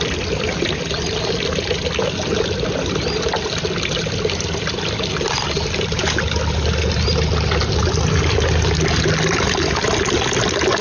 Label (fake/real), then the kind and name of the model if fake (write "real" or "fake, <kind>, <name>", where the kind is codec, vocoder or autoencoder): real